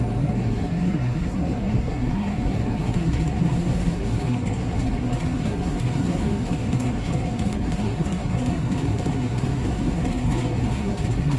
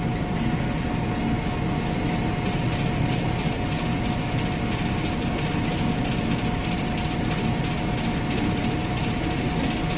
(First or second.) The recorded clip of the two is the second